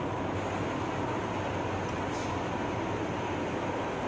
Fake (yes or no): no